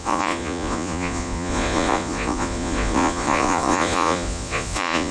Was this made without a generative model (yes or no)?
no